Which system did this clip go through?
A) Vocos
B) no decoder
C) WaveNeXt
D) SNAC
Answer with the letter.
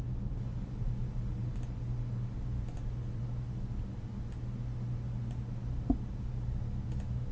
B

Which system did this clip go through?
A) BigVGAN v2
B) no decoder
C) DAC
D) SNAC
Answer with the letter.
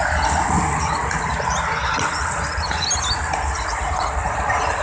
B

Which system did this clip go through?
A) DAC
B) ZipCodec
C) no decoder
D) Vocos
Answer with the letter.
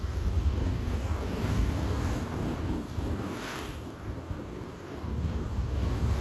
A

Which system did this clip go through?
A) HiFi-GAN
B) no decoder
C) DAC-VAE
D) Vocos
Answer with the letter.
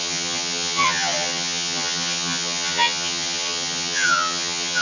A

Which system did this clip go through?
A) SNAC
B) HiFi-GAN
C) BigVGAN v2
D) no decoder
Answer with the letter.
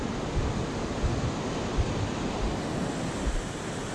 D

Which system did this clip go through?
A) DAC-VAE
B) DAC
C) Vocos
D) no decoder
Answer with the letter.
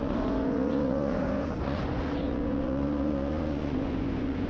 C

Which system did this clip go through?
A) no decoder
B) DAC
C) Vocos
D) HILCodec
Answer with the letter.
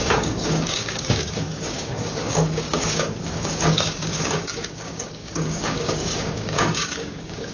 B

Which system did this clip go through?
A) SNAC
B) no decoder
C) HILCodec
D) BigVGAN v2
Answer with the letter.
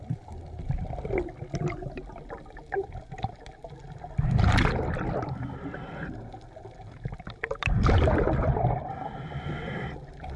B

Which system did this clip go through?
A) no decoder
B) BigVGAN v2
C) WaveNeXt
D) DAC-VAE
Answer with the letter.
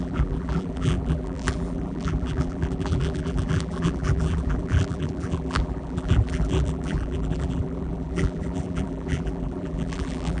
B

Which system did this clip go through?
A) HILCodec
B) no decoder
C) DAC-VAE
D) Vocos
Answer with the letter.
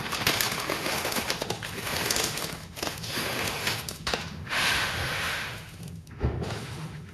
C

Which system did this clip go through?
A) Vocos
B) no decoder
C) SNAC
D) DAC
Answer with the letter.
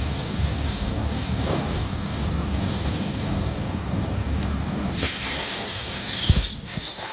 D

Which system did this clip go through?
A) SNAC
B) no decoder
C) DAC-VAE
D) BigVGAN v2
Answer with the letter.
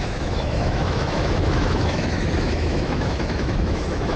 C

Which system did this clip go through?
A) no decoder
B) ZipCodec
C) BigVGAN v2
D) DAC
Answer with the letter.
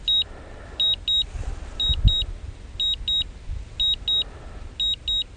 A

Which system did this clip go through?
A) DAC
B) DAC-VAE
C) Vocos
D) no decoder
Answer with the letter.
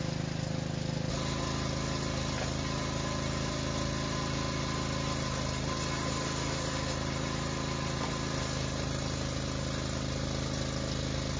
D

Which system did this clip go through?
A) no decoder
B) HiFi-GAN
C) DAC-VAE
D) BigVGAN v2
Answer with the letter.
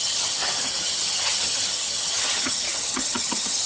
B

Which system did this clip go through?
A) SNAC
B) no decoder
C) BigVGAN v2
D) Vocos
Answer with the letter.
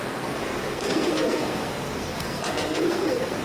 A